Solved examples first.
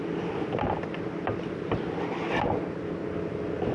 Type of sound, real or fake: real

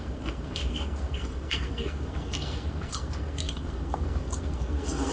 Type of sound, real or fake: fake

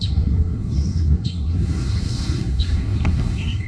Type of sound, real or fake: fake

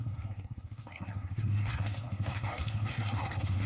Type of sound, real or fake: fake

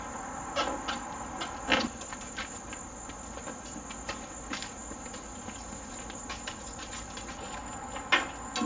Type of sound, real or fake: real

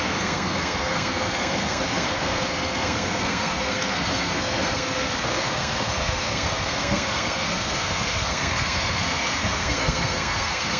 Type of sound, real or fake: fake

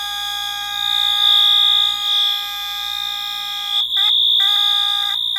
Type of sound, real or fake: real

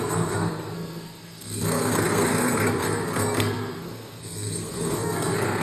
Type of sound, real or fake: fake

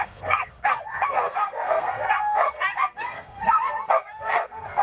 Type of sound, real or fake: fake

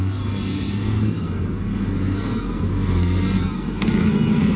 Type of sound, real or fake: fake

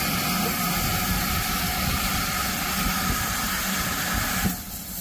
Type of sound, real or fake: real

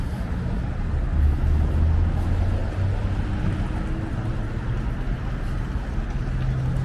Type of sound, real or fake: real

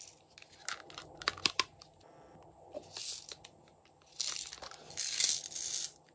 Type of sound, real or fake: real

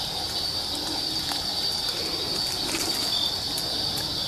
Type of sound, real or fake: real